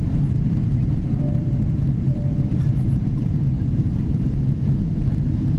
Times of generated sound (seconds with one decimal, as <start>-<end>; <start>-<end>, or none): 0.7-4.1